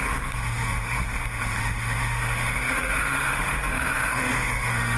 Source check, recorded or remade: remade